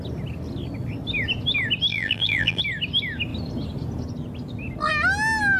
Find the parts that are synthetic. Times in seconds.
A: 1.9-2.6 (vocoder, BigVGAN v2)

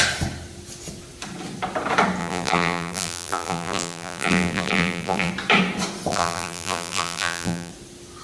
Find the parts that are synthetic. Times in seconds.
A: 2.2-5.3 (vocoder, BigVGAN v2); 6.1-7.7

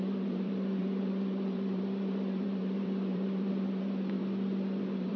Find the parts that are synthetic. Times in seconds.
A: 0.0-4.2 (vocoder, BigVGAN v2); 4.8-5.2

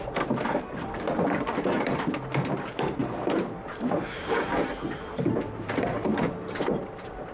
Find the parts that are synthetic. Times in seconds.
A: 0.0-7.3 (vocoder, BigVGAN v2)

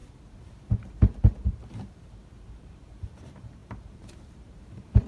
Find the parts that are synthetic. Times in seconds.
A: 0.0-5.1 (vocoder, BigVGAN v2)

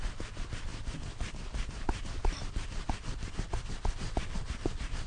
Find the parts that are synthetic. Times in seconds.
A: 0.0-5.1 (vocoder, BigVGAN v2)

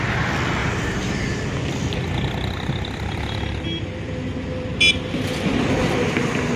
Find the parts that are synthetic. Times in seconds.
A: 0.6-1.4 (vocoder, BigVGAN v2)

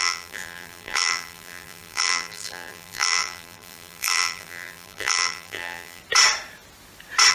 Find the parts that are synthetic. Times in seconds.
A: 0.0-6.0 (vocoder, BigVGAN v2)